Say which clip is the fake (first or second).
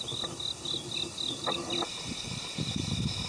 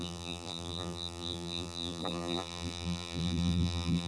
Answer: second